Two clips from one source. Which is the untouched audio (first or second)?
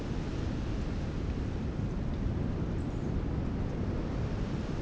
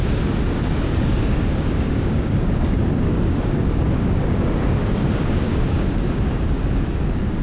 first